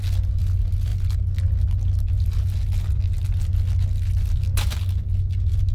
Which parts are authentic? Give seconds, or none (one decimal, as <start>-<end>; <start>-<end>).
0.0-5.7